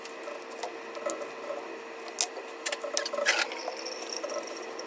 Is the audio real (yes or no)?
yes